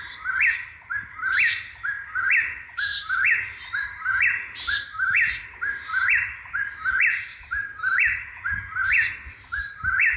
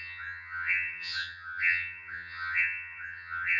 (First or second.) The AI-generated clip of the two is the second